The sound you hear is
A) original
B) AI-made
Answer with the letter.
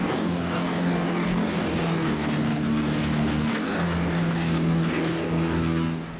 B